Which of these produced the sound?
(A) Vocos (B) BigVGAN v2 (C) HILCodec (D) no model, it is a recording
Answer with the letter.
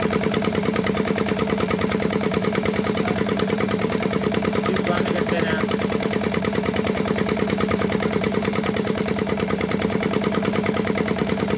B